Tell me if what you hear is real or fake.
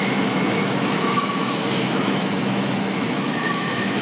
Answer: fake